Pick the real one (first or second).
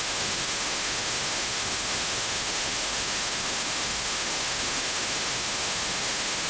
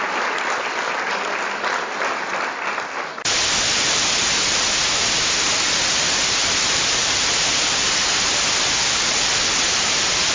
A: second